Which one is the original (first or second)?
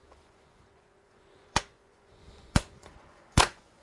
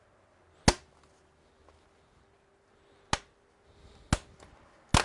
second